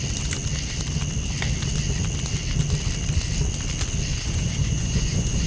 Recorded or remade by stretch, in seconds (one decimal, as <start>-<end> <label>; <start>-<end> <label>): 0.0-4.1 recorded; 4.1-5.5 remade